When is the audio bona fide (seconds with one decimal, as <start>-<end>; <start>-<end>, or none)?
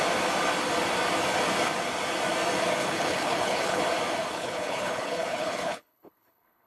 0.0-2.8; 3.8-4.3